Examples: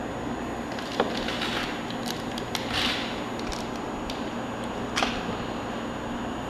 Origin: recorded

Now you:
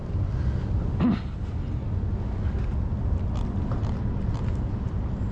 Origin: recorded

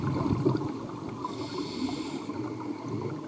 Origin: remade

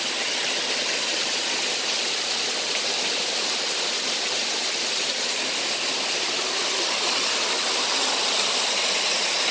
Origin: recorded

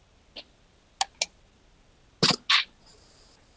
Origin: recorded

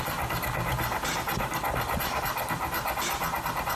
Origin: recorded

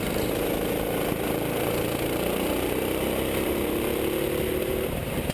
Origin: remade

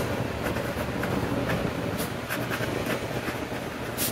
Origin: recorded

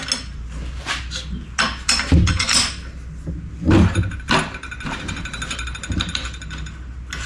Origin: recorded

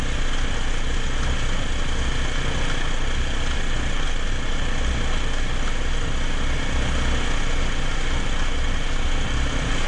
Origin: recorded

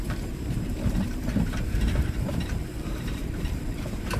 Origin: remade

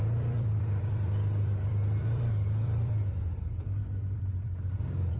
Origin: remade